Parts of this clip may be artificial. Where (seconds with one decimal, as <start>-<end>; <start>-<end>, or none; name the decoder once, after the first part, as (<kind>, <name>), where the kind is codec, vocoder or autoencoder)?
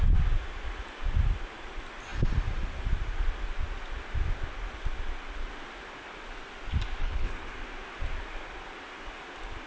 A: 7.0-7.5 (codec, HILCodec)